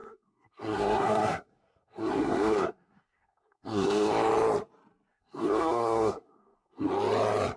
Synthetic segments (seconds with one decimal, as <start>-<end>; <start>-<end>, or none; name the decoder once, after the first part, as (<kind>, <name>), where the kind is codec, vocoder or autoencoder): 0.0-4.1 (codec, SNAC); 5.1-6.9